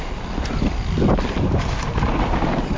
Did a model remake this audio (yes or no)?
no